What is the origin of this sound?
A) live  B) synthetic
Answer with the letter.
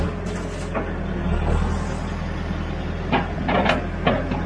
A